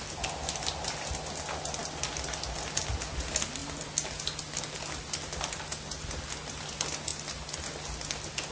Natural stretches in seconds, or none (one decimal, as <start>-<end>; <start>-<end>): 0.0-8.5